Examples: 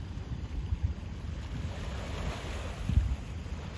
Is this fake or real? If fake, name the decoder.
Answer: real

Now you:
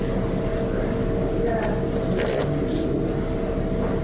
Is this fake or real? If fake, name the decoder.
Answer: real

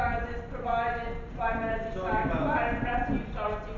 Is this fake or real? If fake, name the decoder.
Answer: real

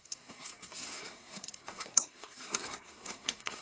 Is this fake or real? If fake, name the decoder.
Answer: fake, codec, SNAC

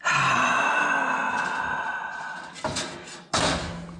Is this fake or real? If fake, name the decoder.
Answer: real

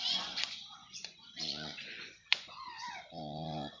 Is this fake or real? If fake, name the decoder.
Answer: fake, vocoder, Vocos